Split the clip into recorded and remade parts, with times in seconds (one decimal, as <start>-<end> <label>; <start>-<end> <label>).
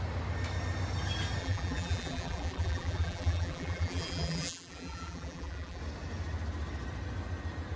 0.0-1.4 recorded; 1.4-5.8 remade; 5.8-7.8 recorded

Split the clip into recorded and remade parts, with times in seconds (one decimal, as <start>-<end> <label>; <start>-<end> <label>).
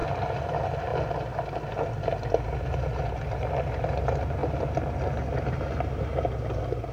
0.0-0.9 remade; 0.9-2.6 recorded; 2.6-4.4 remade; 4.4-5.6 recorded; 5.6-6.9 remade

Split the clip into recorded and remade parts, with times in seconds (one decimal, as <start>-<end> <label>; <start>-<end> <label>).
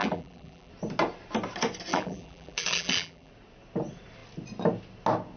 0.0-0.7 remade; 0.7-1.9 recorded; 1.9-3.3 remade; 3.3-5.4 recorded